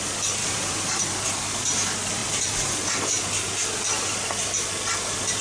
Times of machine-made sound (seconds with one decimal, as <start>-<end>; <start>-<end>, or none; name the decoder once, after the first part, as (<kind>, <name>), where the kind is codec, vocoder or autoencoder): none